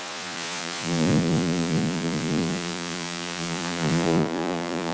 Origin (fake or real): fake